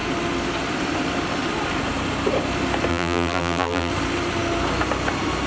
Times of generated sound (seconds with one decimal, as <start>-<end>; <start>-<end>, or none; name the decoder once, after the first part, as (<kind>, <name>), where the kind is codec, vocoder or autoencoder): 2.9-3.9 (vocoder, BigVGAN v2)

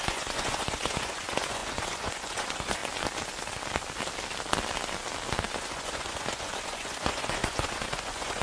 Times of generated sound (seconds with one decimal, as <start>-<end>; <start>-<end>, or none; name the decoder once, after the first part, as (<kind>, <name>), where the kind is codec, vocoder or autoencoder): 0.0-2.8 (vocoder, Vocos); 5.5-8.4

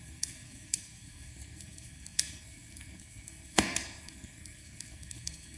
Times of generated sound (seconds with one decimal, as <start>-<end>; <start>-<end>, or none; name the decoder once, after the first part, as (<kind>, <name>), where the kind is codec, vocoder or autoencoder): 0.0-5.6 (codec, SNAC)

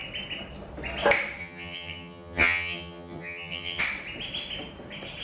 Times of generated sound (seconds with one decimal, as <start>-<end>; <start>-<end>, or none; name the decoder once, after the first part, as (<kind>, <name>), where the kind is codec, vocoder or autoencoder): 1.4-3.8 (vocoder, HiFi-GAN)